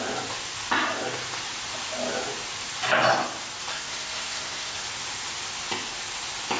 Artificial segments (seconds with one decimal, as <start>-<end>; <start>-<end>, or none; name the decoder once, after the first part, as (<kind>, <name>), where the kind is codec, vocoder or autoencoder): 3.7-4.8 (codec, SNAC)